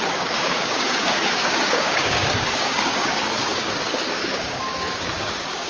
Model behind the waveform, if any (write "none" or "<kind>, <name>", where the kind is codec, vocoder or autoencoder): codec, DAC